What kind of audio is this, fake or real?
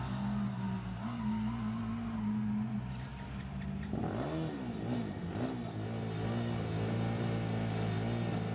real